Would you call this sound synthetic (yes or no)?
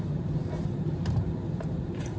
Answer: yes